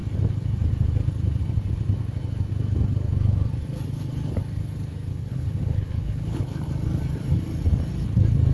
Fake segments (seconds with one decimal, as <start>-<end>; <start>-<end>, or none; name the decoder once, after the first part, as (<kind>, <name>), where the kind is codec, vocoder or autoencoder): 5.1-6.7 (codec, HILCodec)